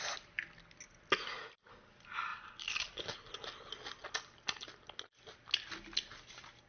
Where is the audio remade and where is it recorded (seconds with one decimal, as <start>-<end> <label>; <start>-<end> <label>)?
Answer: 0.0-6.7 recorded

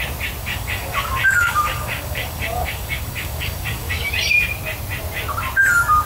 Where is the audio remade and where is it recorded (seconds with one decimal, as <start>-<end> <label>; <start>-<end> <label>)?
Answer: 0.0-0.4 recorded; 0.4-4.1 remade; 4.1-6.1 recorded

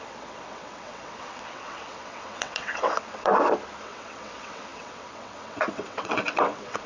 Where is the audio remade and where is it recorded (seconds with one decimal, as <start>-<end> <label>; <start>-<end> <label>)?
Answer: 0.0-3.3 remade; 3.3-3.8 recorded; 3.8-6.9 remade

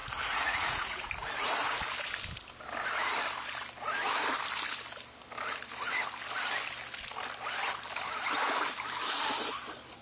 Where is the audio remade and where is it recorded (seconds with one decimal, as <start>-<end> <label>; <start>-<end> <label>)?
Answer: 0.0-1.1 remade; 1.1-10.0 recorded

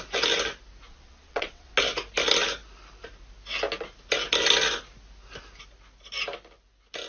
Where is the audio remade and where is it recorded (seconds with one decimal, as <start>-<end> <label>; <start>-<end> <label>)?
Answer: 0.0-0.9 recorded; 0.9-1.7 remade; 1.7-7.1 recorded

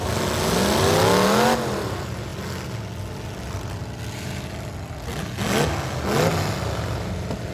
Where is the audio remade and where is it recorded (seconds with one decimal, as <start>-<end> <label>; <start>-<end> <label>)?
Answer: 0.0-7.5 recorded

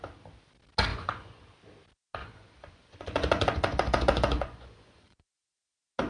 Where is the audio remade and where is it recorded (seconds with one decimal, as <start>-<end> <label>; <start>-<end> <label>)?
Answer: 0.0-0.9 recorded; 0.9-1.4 remade; 1.4-2.2 recorded; 2.2-5.5 remade; 5.5-6.1 recorded

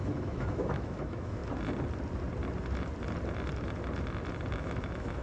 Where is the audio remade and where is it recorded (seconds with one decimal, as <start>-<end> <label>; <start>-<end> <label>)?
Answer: 0.0-1.4 remade; 1.4-4.5 recorded; 4.5-5.2 remade